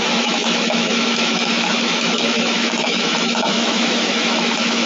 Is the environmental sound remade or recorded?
remade